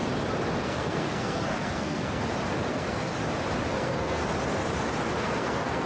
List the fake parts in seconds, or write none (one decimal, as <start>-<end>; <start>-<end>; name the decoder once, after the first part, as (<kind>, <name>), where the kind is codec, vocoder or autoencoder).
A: 0.6-2.2 (codec, SNAC); 2.7-3.1; 3.7-4.2; 5.2-5.9